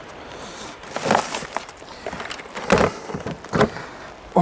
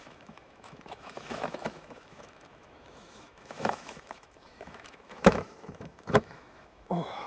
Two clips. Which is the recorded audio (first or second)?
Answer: first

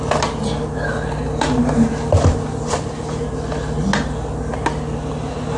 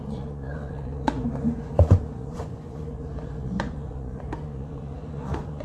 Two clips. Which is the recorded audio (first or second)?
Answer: first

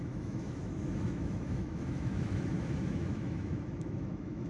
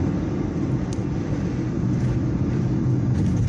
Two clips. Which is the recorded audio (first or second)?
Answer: second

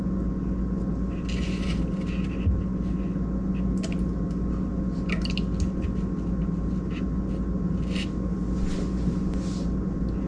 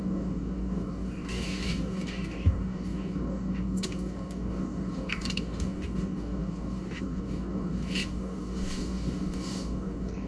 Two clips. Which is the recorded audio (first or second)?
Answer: first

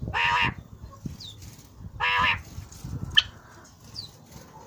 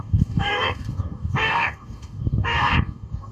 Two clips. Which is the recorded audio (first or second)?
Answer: first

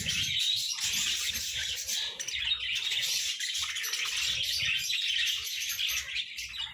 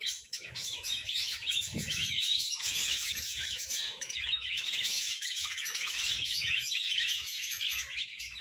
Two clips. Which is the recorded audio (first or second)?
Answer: first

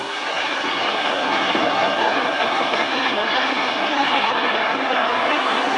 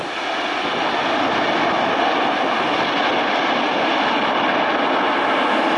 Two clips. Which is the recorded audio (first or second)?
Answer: second